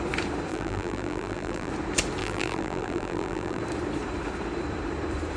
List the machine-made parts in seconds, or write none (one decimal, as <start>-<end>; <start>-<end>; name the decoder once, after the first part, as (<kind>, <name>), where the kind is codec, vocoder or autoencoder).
0.5-1.7 (vocoder, BigVGAN v2); 2.2-3.6

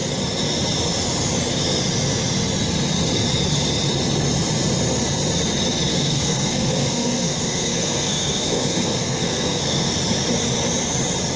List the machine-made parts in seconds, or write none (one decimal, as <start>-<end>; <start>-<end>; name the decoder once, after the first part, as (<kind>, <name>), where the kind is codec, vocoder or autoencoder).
5.9-9.9 (codec, SNAC)

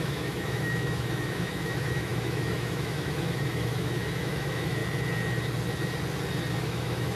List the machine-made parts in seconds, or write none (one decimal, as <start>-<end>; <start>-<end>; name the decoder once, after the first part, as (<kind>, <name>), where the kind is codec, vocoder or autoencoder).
0.0-4.8 (autoencoder, DAC-VAE); 6.6-7.2

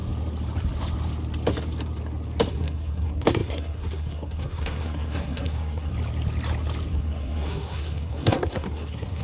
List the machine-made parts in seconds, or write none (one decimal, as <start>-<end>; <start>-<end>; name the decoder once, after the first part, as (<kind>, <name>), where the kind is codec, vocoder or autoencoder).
2.5-5.9 (codec, SNAC); 6.9-9.2

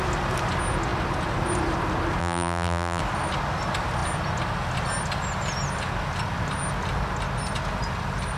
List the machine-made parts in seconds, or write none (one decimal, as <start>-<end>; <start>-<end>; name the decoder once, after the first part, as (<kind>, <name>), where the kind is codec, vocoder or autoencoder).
2.2-3.0 (vocoder, BigVGAN v2)

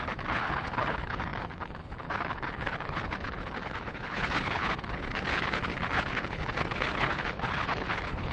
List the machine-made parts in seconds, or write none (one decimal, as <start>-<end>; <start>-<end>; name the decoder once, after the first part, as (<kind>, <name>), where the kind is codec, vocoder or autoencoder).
0.0-8.3 (codec, HILCodec)

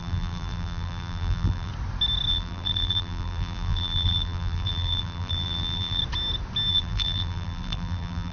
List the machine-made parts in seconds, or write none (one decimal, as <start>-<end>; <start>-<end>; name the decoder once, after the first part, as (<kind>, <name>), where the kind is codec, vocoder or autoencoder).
0.0-1.7 (vocoder, BigVGAN v2); 2.3-6.0; 6.7-8.3